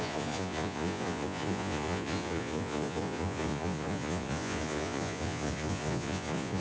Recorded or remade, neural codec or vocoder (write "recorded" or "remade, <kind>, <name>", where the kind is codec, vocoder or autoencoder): remade, vocoder, Vocos